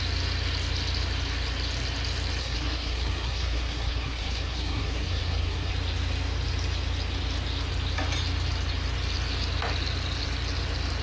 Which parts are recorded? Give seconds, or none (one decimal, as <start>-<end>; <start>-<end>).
0.0-2.4; 5.7-11.0